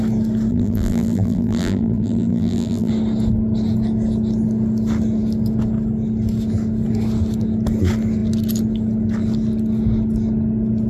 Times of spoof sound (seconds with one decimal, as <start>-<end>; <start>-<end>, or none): 0.5-2.9